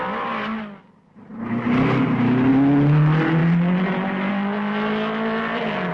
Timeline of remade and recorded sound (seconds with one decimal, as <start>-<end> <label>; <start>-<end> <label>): 0.0-5.9 recorded

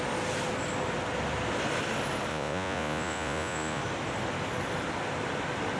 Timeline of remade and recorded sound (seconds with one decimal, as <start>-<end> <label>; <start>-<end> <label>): 0.0-2.3 recorded; 2.3-3.8 remade; 3.8-5.8 recorded

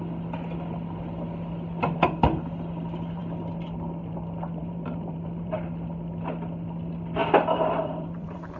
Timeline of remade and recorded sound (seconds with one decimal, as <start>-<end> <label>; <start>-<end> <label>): 0.0-4.6 recorded; 4.6-5.6 remade; 5.6-7.2 recorded; 7.2-8.6 remade